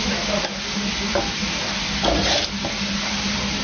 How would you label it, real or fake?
real